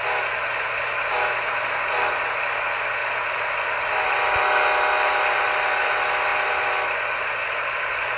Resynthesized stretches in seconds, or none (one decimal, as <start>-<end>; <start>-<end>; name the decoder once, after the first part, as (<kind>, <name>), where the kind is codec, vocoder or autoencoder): none